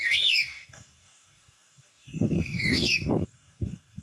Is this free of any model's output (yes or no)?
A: no